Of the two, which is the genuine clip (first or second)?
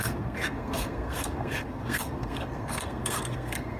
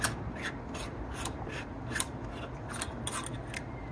second